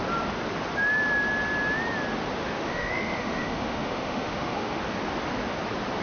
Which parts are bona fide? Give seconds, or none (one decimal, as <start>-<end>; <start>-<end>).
0.0-2.4; 4.8-6.0